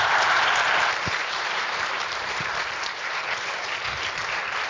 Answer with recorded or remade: remade